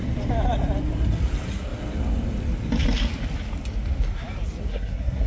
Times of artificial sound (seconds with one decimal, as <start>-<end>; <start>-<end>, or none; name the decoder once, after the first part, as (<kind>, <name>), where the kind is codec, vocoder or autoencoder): 4.7-5.3 (codec, SNAC)

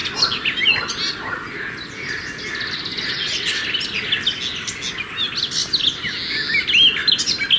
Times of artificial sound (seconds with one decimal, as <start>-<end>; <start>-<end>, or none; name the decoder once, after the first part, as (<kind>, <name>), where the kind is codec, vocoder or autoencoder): 3.1-3.6 (vocoder, WaveNeXt)

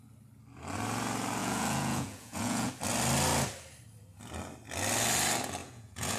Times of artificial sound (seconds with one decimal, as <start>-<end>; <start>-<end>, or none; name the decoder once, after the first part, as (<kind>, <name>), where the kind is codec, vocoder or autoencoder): 1.4-2.7 (vocoder, Vocos); 5.6-6.2

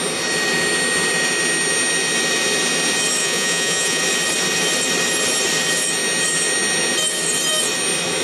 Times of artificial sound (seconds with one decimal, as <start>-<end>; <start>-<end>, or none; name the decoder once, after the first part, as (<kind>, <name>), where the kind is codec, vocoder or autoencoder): 3.2-4.0 (vocoder, Vocos)

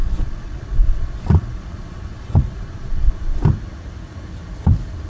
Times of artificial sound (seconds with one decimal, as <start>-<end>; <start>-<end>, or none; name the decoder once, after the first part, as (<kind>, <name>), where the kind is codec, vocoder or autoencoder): 0.0-3.1 (vocoder, Vocos)

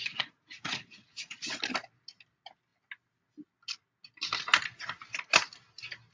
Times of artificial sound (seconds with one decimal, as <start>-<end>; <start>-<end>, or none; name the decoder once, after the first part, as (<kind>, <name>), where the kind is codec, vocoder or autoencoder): 0.0-1.6 (vocoder, Vocos)